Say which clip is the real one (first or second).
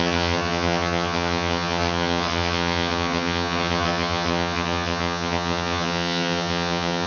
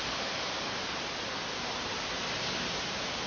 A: second